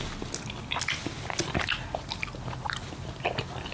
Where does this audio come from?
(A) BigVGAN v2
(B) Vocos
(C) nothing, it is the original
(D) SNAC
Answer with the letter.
C